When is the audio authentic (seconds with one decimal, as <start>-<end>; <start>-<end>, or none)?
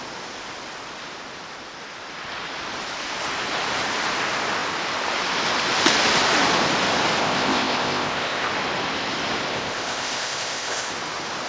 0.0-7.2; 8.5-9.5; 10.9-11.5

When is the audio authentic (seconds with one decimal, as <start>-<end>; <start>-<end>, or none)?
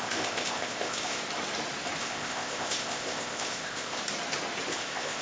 1.2-2.0; 4.0-4.7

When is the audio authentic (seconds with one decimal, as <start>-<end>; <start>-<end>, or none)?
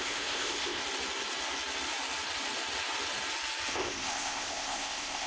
0.8-3.7